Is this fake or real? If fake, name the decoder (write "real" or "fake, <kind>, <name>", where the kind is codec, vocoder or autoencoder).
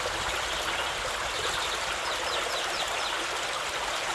real